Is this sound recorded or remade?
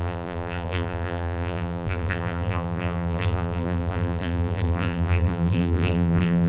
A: remade